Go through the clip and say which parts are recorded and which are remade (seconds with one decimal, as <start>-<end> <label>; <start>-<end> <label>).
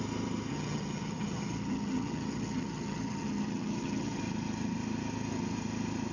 0.0-0.5 recorded; 0.5-4.2 remade; 4.2-6.1 recorded